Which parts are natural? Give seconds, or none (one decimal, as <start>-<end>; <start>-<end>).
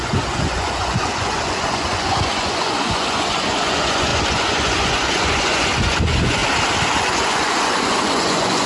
6.4-7.0